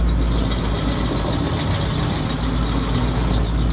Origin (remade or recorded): recorded